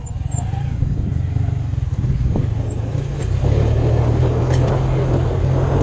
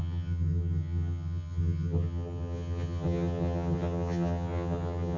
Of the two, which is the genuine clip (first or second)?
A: first